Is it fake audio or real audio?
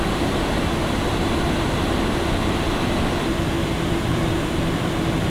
real